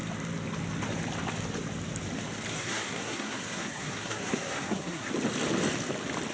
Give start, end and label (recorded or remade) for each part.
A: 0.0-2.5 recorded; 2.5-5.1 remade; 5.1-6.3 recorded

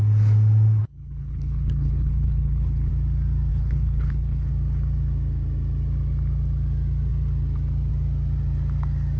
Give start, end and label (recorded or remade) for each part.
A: 0.0-0.8 recorded; 0.8-2.9 remade; 2.9-3.5 recorded; 3.5-4.5 remade; 4.5-9.2 recorded

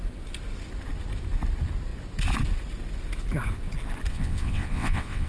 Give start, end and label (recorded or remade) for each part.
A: 0.0-4.1 recorded; 4.1-5.3 remade